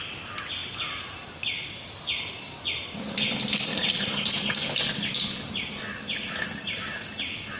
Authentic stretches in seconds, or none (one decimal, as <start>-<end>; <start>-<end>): 0.0-7.6